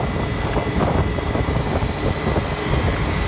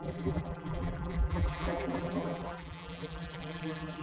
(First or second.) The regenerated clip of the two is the second